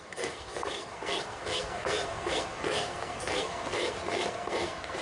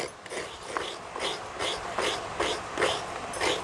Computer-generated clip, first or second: first